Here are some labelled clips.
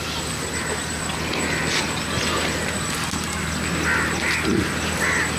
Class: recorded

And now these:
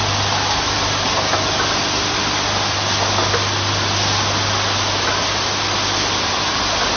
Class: recorded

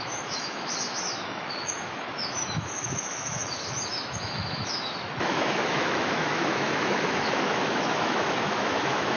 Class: remade